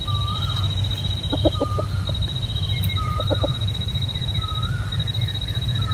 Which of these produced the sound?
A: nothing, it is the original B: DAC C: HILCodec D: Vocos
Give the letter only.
A